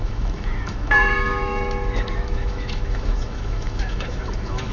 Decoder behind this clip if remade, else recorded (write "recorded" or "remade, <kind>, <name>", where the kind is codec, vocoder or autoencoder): remade, autoencoder, DAC-VAE